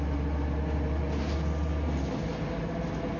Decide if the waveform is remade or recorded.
recorded